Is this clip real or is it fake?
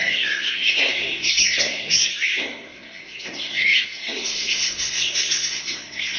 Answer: fake